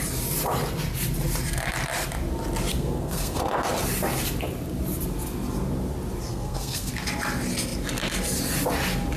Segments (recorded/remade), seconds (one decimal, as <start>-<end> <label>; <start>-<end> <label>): 0.0-2.7 recorded; 2.7-3.4 remade; 3.4-6.3 recorded; 6.3-6.9 remade; 6.9-9.2 recorded